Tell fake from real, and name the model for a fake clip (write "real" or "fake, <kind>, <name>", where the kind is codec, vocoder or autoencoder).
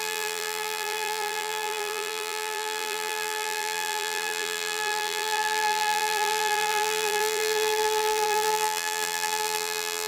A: fake, vocoder, BigVGAN v2